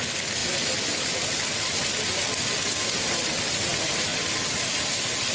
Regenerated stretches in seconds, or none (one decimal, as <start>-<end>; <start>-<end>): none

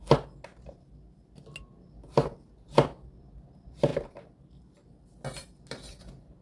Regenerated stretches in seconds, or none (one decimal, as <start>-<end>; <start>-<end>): none

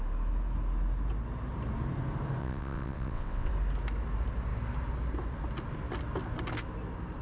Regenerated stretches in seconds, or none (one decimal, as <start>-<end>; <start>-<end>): 2.4-3.5